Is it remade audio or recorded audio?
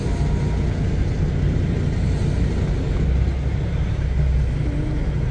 recorded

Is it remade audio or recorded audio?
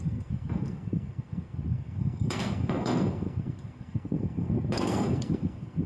remade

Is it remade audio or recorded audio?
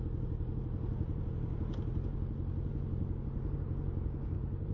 recorded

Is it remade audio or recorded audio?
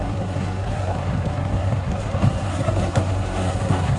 remade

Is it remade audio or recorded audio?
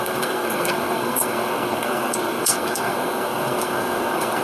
remade